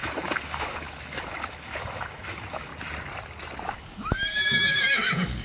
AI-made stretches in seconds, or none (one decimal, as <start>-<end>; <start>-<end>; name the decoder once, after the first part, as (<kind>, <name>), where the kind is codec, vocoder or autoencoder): 0.0-2.7 (autoencoder, DAC-VAE); 3.7-5.4